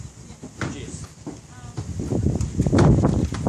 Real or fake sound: real